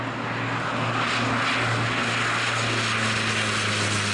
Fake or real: real